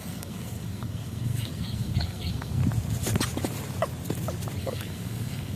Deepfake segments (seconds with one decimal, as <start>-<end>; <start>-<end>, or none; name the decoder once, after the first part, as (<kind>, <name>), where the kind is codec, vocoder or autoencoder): 0.0-2.6 (codec, SNAC); 4.6-5.6